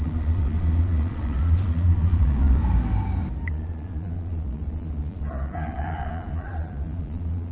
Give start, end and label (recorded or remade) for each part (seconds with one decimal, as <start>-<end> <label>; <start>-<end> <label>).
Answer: 0.0-2.6 remade; 2.6-3.5 recorded; 3.5-7.5 remade